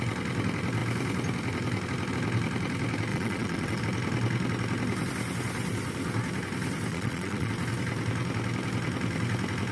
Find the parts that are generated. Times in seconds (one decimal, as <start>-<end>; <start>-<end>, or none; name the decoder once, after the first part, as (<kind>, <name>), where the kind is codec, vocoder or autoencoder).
3.1-3.8 (vocoder, Vocos); 6.9-7.5